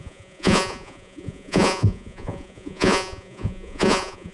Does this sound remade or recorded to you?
remade